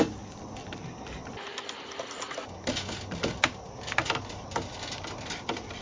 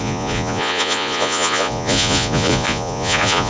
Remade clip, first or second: second